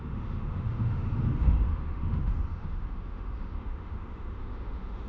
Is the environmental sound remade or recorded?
remade